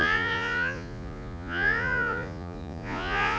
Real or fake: fake